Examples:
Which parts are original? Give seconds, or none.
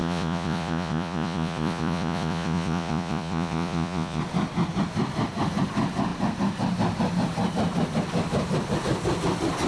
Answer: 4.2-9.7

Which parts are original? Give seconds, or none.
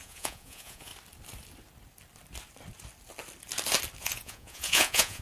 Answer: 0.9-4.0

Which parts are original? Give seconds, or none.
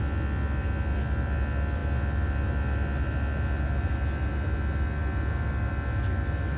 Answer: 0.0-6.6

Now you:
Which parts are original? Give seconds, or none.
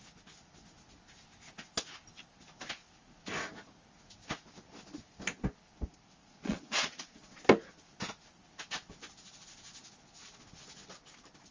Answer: 0.0-6.2; 7.4-11.5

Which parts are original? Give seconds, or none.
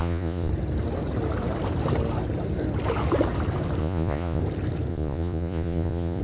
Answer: 0.5-3.8; 4.4-4.9